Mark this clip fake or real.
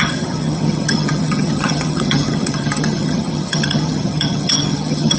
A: fake